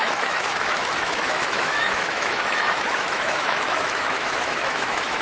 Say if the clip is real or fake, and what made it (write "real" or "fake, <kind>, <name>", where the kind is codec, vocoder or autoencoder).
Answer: fake, autoencoder, DAC-VAE